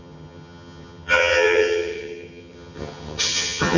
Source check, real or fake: fake